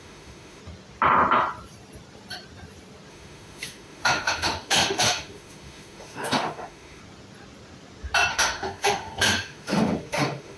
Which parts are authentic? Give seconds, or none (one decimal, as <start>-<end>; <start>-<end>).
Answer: 0.6-3.1; 7.0-8.3